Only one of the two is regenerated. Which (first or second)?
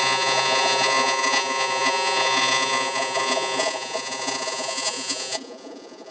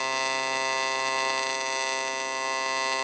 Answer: first